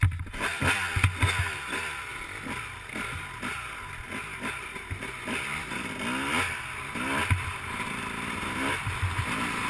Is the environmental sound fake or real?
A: real